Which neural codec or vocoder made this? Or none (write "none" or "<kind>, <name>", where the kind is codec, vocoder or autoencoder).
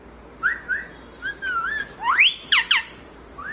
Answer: none